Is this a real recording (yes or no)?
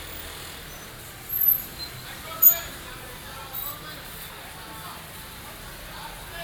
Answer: yes